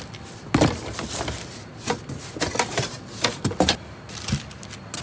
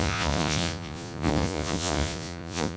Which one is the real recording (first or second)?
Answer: first